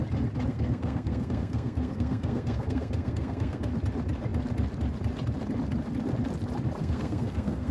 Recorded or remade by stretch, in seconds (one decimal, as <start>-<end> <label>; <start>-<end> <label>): 0.0-0.5 recorded; 0.5-3.7 remade; 3.7-6.8 recorded; 6.8-7.7 remade